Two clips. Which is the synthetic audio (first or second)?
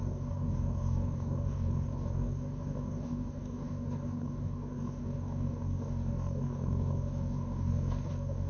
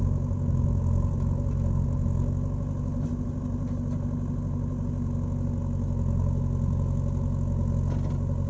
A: first